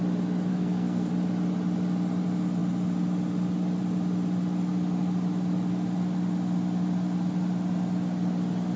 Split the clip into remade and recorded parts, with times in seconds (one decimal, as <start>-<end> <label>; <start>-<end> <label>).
0.0-0.5 recorded; 0.5-1.1 remade; 1.1-8.8 recorded